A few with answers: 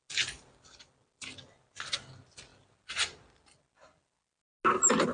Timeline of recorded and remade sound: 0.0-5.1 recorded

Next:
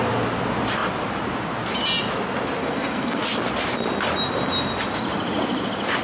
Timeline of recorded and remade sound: 0.0-2.6 recorded; 2.6-3.2 remade; 3.2-6.0 recorded

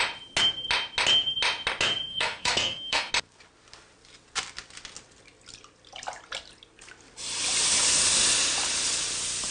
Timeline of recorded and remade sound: 0.0-2.1 recorded; 2.1-3.1 remade; 3.1-9.5 recorded

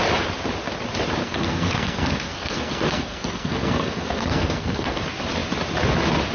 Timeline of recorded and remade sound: 0.0-1.2 recorded; 1.2-5.0 remade; 5.0-6.3 recorded

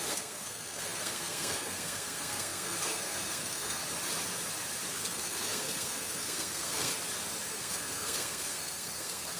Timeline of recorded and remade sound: 0.0-3.8 remade; 3.8-4.9 recorded; 4.9-6.9 remade; 6.9-7.5 recorded; 7.5-9.4 remade

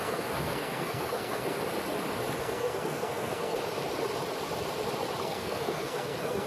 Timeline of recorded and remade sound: 0.0-1.6 remade; 1.6-2.4 recorded; 2.4-3.6 remade; 3.6-5.2 recorded; 5.2-6.5 remade

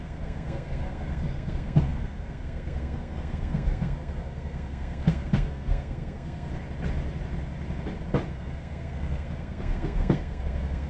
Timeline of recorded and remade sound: 0.0-6.5 remade; 6.5-8.3 recorded; 8.3-10.9 remade

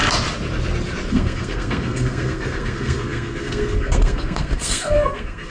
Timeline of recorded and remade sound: 0.0-1.1 recorded; 1.1-5.5 remade